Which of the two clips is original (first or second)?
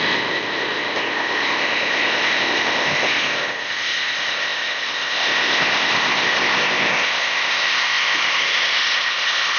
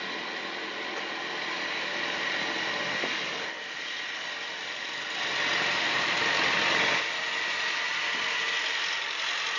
second